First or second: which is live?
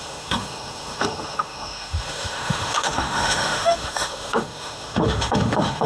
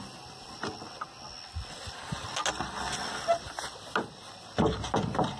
second